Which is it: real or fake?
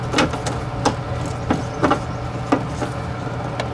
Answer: real